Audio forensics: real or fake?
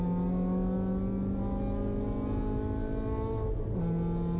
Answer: real